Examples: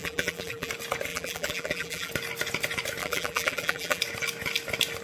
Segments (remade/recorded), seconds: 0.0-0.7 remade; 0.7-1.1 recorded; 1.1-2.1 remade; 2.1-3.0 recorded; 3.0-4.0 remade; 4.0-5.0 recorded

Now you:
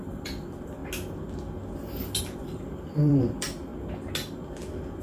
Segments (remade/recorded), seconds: 0.0-0.8 remade; 0.8-2.2 recorded; 2.2-3.7 remade; 3.7-5.0 recorded

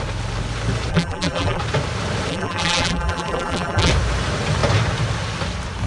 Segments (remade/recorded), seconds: 0.0-0.9 recorded; 0.9-1.6 remade; 1.6-2.3 recorded; 2.3-3.9 remade; 3.9-5.9 recorded

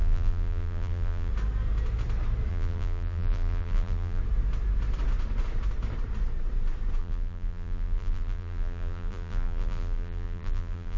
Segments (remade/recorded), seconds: 0.0-1.3 remade; 1.3-2.5 recorded; 2.5-4.2 remade; 4.2-7.0 recorded; 7.0-11.0 remade

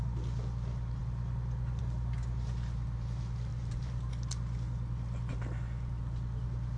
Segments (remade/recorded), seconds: 0.0-3.5 recorded; 3.5-4.1 remade; 4.1-6.8 recorded